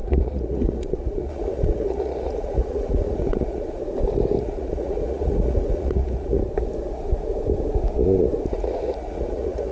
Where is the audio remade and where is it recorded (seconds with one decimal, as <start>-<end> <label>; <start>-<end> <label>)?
0.0-3.8 remade; 3.8-4.4 recorded; 4.4-6.4 remade; 6.4-8.5 recorded; 8.5-9.7 remade